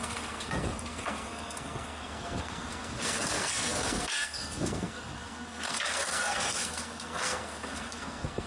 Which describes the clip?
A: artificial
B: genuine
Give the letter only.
A